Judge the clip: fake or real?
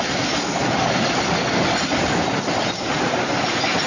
real